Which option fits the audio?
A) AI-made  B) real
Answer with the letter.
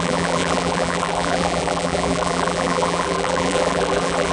A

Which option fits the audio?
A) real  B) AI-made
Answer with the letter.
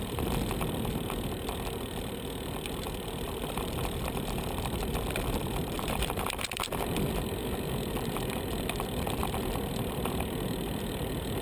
B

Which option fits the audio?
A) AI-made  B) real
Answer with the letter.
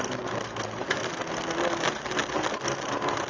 B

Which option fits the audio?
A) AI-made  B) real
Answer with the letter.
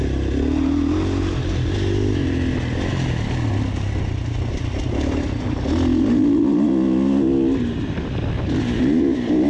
B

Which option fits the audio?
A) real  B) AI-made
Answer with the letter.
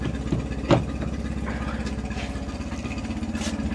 B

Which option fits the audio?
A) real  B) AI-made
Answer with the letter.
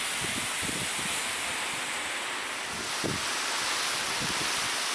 A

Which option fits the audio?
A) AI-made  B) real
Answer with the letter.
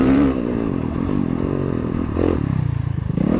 A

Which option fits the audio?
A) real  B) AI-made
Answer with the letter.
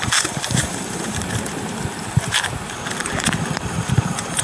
B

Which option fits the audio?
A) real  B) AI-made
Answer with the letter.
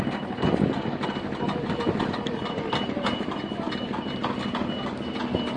B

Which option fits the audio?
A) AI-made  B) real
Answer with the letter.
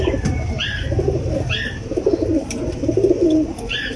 A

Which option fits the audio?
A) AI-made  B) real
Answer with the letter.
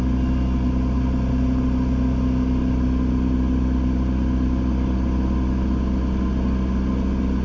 B